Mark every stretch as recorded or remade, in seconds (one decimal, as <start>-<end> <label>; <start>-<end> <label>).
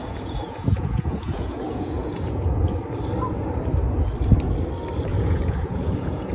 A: 0.0-2.6 remade; 2.6-5.1 recorded; 5.1-6.3 remade